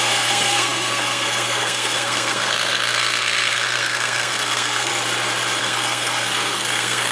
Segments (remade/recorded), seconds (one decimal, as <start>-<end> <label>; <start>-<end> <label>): 0.0-4.9 remade; 4.9-5.6 recorded; 5.6-7.1 remade